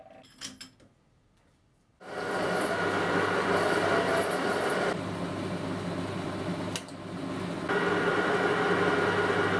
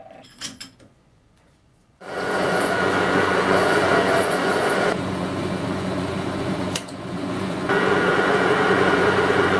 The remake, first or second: second